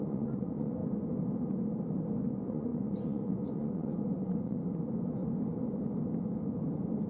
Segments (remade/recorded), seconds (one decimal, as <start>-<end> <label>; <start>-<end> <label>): 0.0-0.8 remade; 0.8-2.2 recorded; 2.2-4.6 remade; 4.6-7.1 recorded